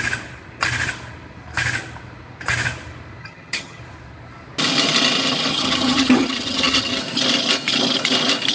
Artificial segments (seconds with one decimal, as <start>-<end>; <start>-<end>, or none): 3.2-3.8; 5.5-7.0